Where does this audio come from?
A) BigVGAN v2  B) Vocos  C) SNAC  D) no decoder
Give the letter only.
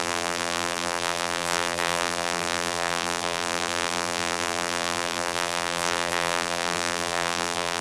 A